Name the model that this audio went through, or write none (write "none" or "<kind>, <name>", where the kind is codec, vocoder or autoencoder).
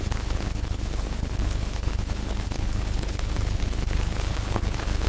codec, HILCodec